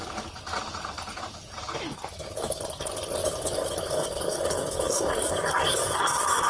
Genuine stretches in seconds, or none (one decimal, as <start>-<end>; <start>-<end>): 0.0-2.1; 2.6-3.2